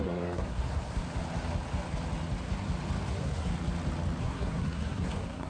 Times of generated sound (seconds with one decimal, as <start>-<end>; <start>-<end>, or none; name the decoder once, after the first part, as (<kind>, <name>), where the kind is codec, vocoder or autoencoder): 0.0-1.0 (codec, SNAC); 3.1-3.5; 4.2-5.5